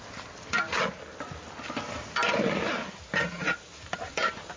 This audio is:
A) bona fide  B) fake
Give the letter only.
A